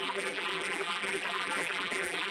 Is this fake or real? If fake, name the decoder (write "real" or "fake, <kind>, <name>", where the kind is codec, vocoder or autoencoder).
fake, vocoder, BigVGAN v2